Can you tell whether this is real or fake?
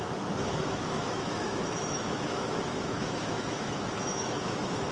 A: fake